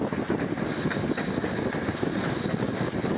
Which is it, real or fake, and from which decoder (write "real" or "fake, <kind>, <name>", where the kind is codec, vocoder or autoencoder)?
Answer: real